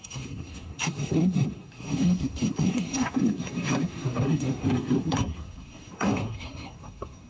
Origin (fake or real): fake